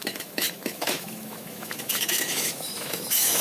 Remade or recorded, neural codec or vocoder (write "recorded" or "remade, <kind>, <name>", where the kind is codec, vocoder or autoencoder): remade, autoencoder, DAC-VAE